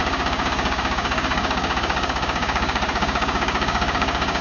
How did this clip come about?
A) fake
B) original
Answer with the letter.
A